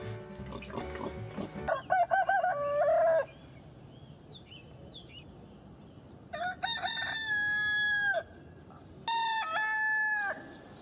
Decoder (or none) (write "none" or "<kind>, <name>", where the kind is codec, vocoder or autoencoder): none